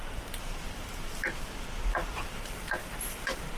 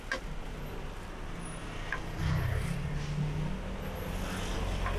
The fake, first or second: first